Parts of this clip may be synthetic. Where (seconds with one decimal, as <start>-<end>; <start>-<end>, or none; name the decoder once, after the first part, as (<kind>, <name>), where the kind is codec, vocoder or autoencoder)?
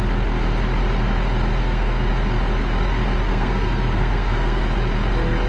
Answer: 1.6-2.1 (codec, SNAC); 3.3-4.6